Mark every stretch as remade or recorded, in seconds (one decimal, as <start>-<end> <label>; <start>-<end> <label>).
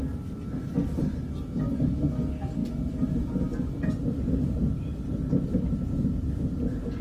0.0-7.0 recorded